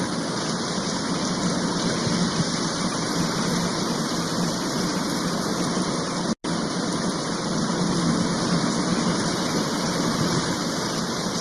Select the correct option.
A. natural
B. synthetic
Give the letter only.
A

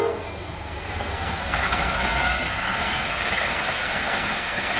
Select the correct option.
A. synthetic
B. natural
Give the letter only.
A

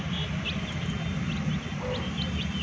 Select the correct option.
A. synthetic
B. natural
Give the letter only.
B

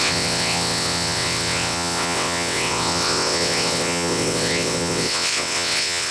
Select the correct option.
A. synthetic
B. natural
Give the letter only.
A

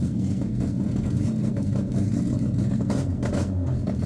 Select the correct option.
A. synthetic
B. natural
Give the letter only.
A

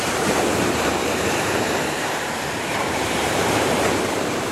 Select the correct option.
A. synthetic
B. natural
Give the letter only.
A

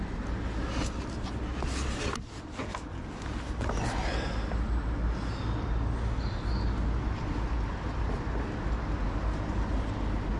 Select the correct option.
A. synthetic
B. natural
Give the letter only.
B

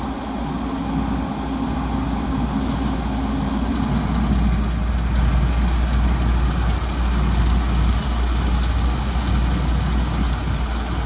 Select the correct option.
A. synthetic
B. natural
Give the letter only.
B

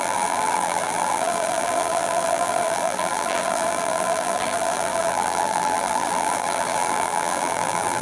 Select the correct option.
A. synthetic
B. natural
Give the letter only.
A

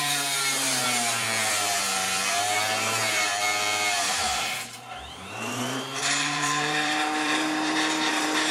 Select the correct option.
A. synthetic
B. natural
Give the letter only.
A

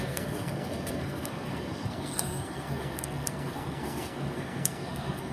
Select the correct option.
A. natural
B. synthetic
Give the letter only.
B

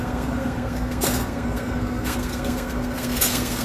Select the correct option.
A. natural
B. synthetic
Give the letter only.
B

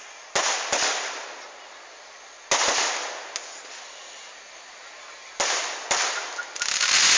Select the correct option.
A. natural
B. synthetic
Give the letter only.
A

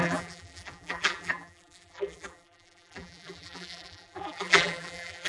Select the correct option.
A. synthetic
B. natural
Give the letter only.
A